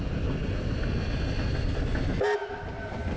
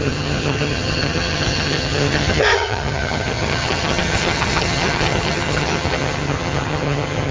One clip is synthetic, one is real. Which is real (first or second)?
first